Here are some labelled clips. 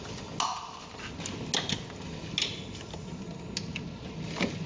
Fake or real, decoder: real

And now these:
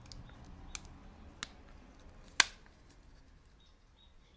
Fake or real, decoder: real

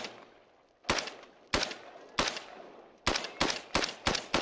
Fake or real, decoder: real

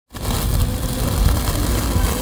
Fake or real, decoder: real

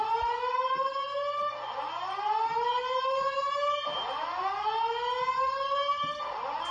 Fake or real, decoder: real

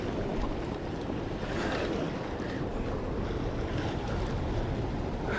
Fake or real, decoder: real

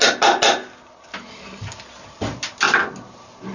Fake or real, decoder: real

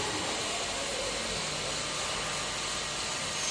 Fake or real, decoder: real